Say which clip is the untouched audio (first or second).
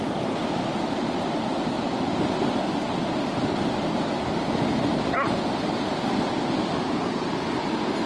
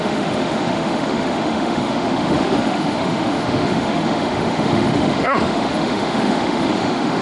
first